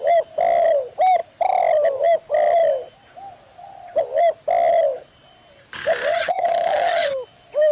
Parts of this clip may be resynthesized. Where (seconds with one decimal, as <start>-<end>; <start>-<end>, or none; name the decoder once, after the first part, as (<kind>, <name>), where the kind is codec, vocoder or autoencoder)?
6.1-7.1 (vocoder, HiFi-GAN)